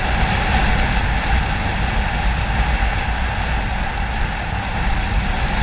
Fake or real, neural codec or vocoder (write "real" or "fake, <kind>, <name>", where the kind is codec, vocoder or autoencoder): real